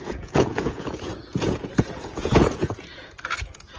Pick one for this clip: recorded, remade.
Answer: remade